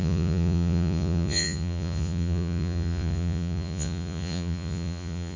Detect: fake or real fake